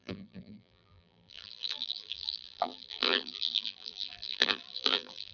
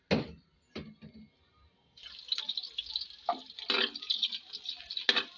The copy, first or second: first